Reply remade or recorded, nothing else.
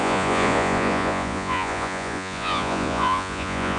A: remade